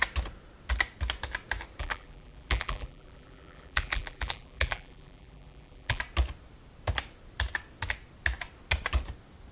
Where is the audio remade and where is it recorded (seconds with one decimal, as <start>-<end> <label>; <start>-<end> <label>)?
0.0-1.8 recorded; 1.8-6.0 remade; 6.0-9.5 recorded